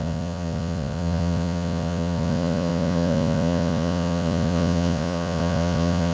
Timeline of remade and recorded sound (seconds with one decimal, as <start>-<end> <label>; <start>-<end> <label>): 0.0-6.1 remade